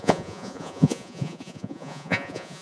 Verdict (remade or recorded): remade